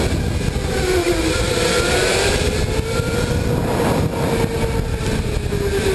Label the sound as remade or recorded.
recorded